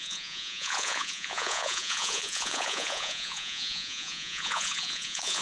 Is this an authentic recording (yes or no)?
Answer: no